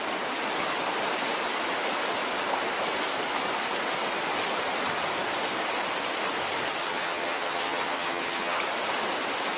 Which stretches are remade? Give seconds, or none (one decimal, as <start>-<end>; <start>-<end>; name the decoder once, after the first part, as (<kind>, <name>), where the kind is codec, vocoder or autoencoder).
6.8-8.6 (vocoder, HiFi-GAN)